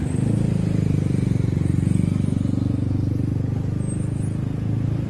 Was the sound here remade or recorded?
recorded